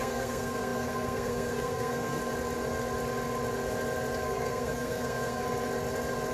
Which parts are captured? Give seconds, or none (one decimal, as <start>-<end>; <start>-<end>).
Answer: 2.2-4.2; 5.4-6.3